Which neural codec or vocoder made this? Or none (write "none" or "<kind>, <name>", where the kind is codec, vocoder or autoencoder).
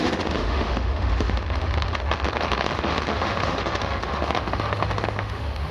autoencoder, DAC-VAE